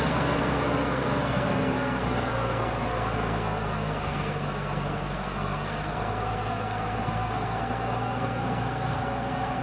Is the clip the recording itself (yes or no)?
no